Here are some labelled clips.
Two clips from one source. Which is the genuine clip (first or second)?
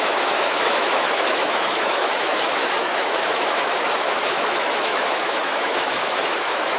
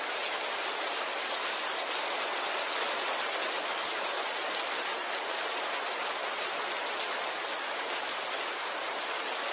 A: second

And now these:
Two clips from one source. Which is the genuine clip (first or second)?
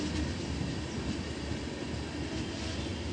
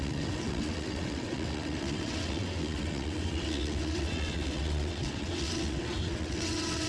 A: first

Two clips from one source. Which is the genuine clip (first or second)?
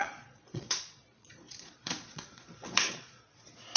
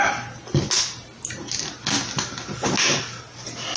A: second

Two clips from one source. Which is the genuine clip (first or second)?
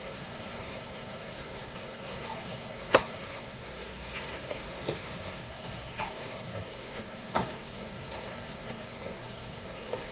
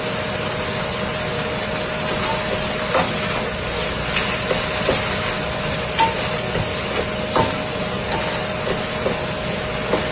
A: second